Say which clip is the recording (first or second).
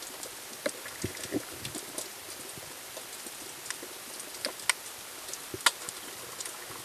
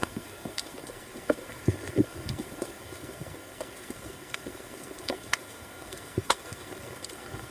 first